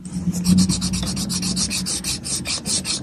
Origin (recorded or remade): recorded